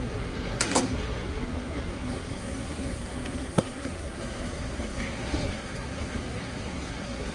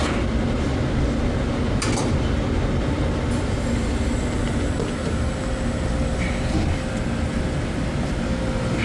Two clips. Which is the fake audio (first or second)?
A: first